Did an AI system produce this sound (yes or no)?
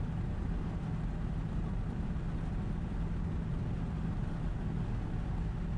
no